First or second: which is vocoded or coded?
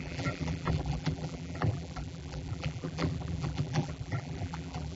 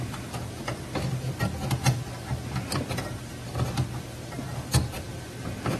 first